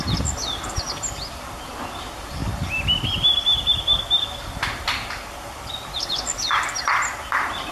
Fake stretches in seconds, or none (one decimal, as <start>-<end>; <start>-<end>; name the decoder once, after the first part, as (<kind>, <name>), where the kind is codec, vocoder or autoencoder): none